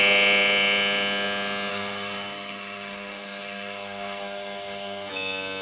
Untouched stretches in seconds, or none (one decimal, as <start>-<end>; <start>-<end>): 0.0-1.7; 5.1-5.6